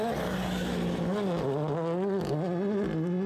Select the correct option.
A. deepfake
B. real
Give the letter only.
B